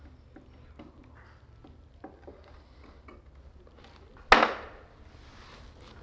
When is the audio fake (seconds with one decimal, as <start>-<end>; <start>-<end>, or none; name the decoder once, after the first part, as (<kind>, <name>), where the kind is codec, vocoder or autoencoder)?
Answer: none